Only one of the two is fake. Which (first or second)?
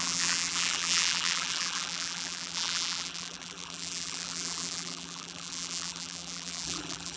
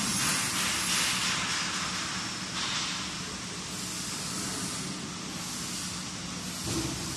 first